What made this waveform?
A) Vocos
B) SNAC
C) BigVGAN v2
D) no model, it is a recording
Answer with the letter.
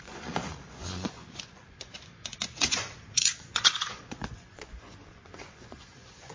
A